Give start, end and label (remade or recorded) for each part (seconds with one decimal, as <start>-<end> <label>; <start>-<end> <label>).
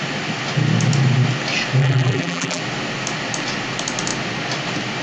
0.0-1.8 recorded; 1.8-2.6 remade; 2.6-5.0 recorded